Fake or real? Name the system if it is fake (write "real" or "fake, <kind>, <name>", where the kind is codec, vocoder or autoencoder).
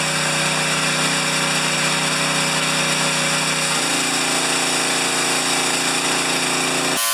real